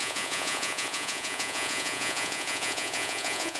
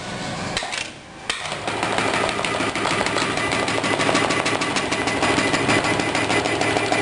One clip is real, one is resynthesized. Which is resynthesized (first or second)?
first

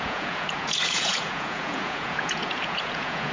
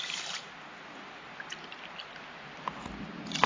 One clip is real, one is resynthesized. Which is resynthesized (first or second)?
first